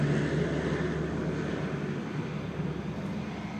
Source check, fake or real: real